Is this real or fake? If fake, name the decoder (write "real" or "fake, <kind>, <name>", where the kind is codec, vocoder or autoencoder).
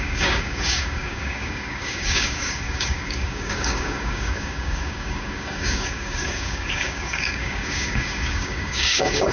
fake, codec, DAC